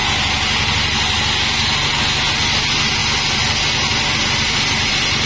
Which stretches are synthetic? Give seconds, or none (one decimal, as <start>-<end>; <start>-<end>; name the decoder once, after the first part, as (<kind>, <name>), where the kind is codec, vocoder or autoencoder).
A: none